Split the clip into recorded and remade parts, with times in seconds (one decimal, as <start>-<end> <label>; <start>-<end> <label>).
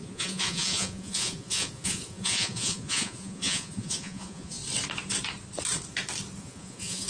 0.0-4.6 remade; 4.6-6.4 recorded; 6.4-7.1 remade